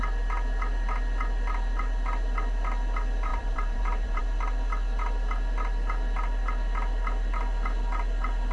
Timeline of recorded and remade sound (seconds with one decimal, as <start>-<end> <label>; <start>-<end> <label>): 0.0-3.3 recorded; 3.3-4.2 remade; 4.2-8.5 recorded